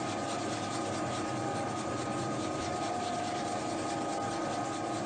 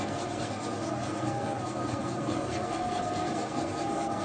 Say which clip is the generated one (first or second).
second